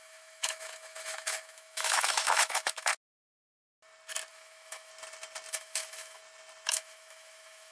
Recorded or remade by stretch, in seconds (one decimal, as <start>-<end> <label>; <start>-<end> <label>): 0.0-2.9 remade; 2.9-4.3 recorded; 4.3-4.9 remade; 4.9-5.5 recorded; 5.5-6.2 remade; 6.2-6.7 recorded; 6.7-7.7 remade